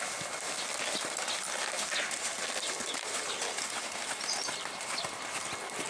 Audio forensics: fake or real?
real